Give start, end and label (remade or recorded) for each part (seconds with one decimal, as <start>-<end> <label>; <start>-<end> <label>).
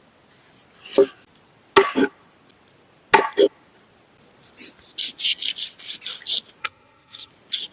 0.0-6.6 recorded; 6.6-7.3 remade; 7.3-7.7 recorded